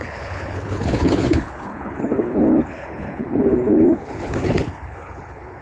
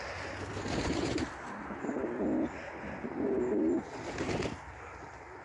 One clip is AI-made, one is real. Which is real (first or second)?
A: second